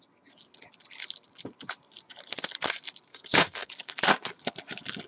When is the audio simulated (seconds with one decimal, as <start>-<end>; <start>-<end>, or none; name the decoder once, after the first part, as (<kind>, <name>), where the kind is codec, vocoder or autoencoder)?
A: 3.1-3.7 (codec, SNAC)